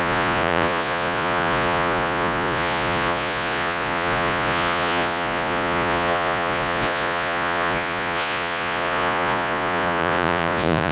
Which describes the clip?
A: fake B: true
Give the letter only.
A